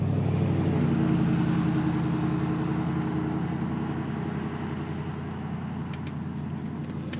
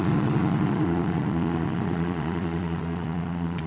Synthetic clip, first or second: second